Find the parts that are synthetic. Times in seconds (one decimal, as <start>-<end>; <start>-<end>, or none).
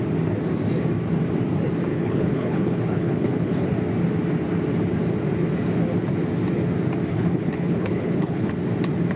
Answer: 1.9-3.7; 7.1-8.5